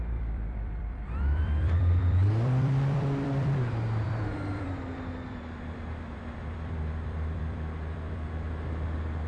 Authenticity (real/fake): fake